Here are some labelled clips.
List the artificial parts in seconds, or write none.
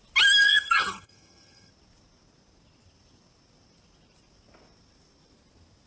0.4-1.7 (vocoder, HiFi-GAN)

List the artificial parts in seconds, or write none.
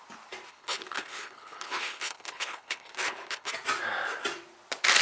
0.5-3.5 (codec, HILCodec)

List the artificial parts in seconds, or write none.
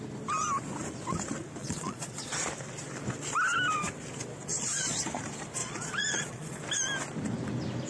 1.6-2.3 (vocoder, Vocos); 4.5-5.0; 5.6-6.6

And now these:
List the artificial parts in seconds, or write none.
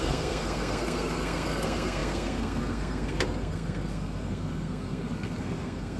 0.0-6.0 (codec, SNAC)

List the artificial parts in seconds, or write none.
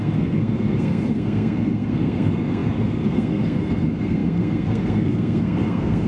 0.0-6.1 (codec, SNAC)